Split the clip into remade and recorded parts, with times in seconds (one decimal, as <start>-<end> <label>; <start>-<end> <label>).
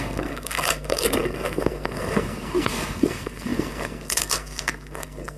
0.0-5.4 remade